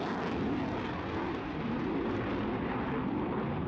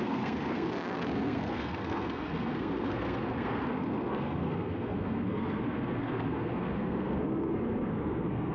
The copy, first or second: second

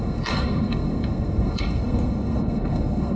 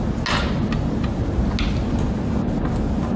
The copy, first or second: first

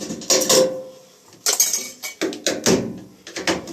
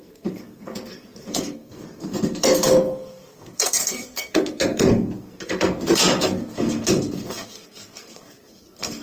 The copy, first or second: second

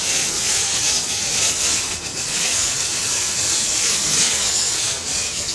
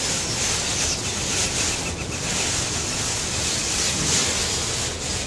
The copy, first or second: first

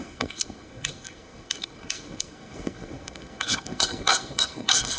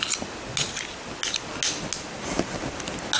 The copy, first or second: first